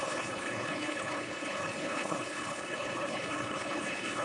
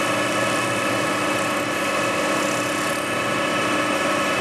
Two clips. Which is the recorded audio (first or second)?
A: second